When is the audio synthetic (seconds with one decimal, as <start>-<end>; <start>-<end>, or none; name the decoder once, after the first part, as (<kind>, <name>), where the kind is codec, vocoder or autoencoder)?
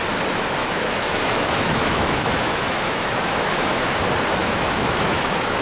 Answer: 0.6-4.0 (autoencoder, DAC-VAE); 4.4-5.6